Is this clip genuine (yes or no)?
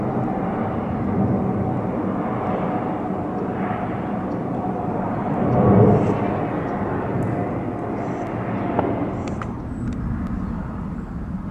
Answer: yes